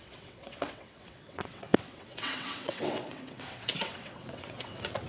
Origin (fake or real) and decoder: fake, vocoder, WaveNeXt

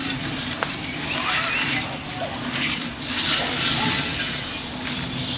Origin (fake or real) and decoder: real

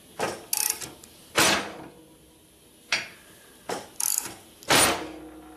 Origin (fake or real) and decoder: real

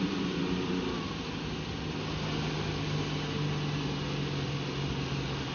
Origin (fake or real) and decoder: real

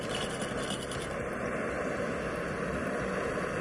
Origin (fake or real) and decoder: real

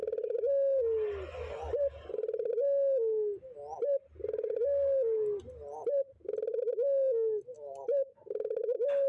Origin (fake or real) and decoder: real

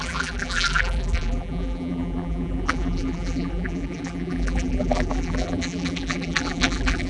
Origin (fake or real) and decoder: fake, vocoder, BigVGAN v2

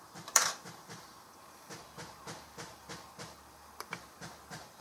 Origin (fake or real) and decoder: fake, vocoder, BigVGAN v2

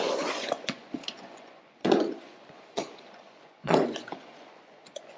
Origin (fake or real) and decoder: fake, vocoder, Vocos